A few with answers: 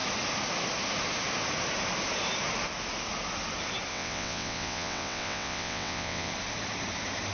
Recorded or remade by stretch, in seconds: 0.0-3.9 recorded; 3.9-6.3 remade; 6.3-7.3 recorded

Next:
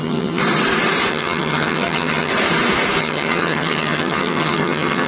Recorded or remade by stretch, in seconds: 0.0-0.4 remade; 0.4-1.1 recorded; 1.1-2.3 remade; 2.3-3.0 recorded; 3.0-5.1 remade

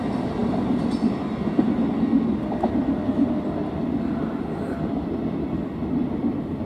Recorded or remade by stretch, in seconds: 0.0-6.7 recorded